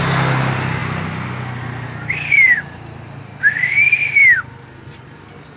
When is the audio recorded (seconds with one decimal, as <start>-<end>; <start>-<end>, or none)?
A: 0.0-5.6